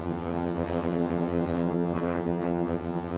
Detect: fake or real fake